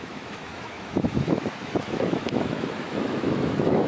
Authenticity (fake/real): fake